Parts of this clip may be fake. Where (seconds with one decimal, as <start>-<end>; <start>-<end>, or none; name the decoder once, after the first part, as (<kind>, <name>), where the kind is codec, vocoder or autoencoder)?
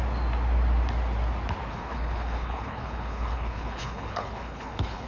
1.7-5.1 (codec, HILCodec)